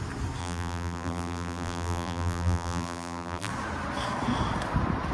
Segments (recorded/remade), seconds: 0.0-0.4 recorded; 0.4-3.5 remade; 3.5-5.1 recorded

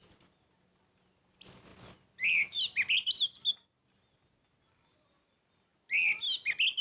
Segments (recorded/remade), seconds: 0.0-6.8 recorded